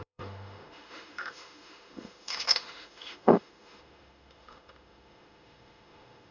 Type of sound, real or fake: fake